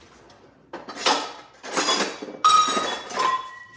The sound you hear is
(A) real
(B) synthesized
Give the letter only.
A